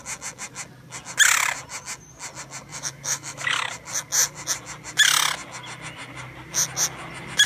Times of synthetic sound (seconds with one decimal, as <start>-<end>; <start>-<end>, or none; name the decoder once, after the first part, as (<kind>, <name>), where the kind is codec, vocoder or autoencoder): 2.7-3.4 (autoencoder, DAC-VAE)